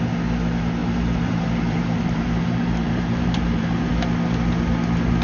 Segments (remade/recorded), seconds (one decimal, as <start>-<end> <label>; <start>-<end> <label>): 0.0-0.8 recorded; 0.8-3.9 remade; 3.9-5.2 recorded